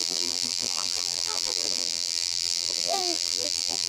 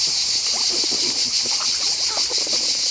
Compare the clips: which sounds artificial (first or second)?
first